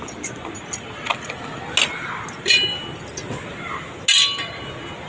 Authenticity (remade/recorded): recorded